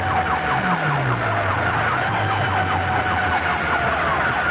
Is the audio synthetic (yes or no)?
no